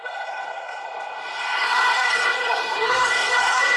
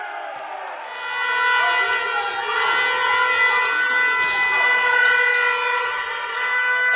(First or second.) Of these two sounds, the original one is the second